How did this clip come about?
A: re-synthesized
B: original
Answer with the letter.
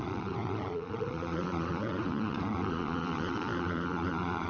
A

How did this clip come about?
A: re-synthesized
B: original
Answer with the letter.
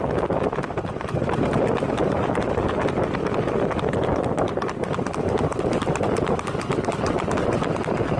B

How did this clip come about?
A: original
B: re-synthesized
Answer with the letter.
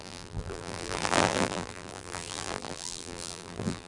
B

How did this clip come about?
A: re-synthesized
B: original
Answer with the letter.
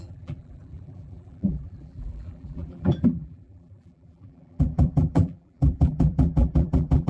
A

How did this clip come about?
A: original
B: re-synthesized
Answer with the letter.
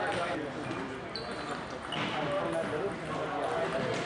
A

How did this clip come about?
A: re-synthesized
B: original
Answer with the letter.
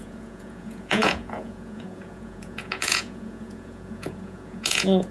A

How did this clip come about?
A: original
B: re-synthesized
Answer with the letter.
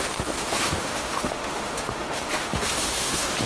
B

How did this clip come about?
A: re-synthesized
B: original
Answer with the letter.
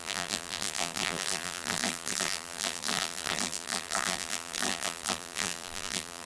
A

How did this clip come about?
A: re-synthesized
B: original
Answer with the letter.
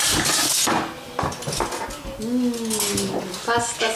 B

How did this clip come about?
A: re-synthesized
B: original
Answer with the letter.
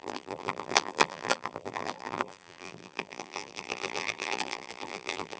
A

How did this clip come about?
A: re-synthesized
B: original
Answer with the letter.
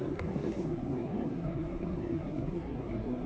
A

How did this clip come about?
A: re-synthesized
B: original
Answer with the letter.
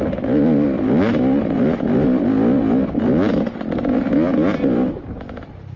B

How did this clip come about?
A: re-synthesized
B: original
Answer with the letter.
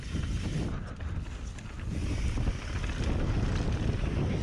B